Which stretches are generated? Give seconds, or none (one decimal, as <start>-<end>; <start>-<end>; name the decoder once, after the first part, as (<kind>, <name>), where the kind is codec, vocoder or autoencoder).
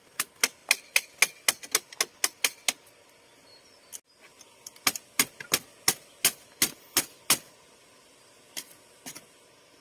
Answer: none